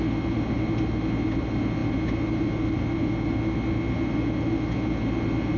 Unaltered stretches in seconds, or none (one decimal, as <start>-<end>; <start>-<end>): 0.0-5.6